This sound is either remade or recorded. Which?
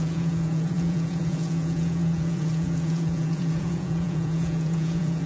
remade